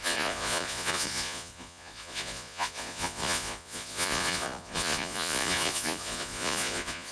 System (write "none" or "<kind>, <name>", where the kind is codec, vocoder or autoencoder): vocoder, Vocos